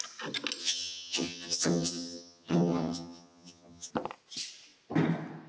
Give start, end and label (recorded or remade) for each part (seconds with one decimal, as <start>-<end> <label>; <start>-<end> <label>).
0.0-0.6 recorded; 0.6-3.9 remade; 3.9-5.5 recorded